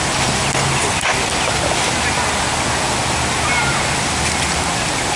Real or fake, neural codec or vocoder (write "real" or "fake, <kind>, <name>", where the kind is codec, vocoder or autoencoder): real